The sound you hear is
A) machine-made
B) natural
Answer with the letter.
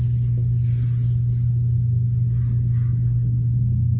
B